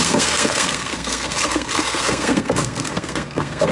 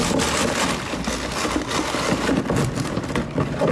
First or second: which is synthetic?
first